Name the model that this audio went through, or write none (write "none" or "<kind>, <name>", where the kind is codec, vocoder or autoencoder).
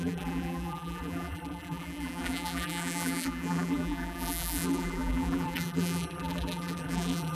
vocoder, BigVGAN v2